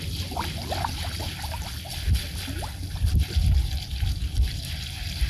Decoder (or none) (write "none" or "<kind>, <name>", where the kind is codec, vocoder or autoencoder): none